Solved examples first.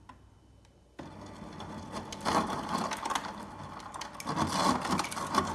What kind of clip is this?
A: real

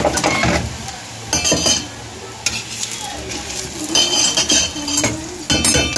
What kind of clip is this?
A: real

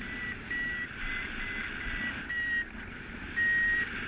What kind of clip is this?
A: real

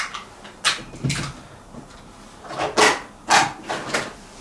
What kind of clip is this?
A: real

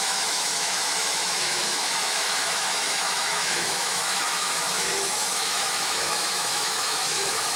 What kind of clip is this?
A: fake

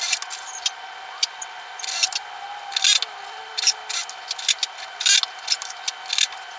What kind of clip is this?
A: real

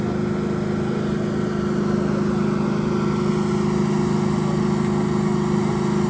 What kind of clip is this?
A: real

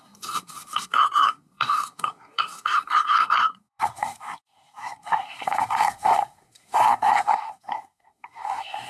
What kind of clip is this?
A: fake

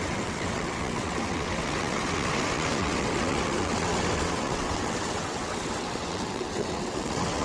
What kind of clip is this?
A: fake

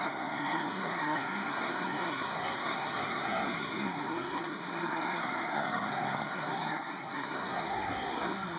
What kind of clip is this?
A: fake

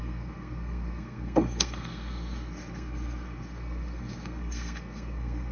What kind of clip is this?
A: fake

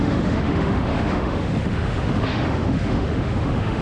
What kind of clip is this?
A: fake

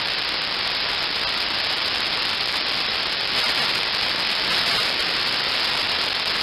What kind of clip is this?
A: real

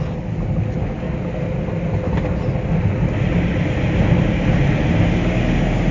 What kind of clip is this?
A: real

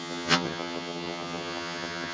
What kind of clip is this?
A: fake